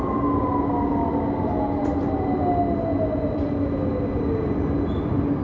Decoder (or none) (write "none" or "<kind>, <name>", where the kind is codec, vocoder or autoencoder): none